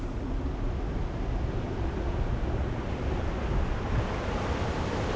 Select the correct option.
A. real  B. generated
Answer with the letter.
A